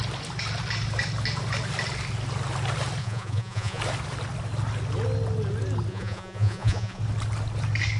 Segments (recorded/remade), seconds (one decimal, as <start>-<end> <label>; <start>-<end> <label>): 0.0-3.0 recorded; 3.0-3.8 remade; 3.8-5.9 recorded; 5.9-7.0 remade; 7.0-8.0 recorded